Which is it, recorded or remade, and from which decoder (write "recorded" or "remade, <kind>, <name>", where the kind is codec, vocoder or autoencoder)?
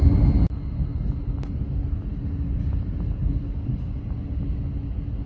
recorded